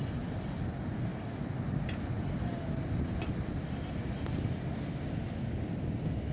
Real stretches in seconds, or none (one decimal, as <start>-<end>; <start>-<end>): 0.0-6.3